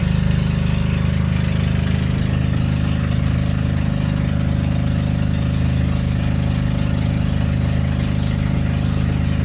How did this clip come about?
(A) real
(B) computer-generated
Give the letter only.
A